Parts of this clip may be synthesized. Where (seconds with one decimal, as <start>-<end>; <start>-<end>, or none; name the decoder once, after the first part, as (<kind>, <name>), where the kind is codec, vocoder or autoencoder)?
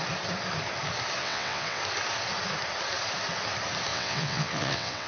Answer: 1.2-1.8 (vocoder, WaveNeXt); 3.9-5.1